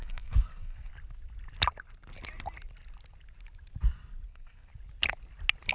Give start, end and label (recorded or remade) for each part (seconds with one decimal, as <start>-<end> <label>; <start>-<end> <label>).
0.0-0.9 remade; 0.9-4.3 recorded; 4.3-4.7 remade; 4.7-5.7 recorded